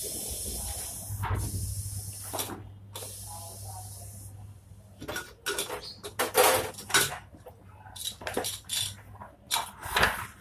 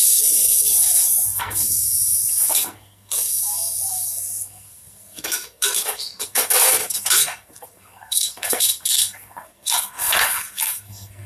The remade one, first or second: second